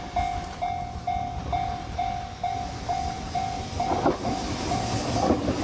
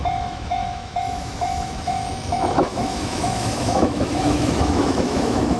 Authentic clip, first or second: first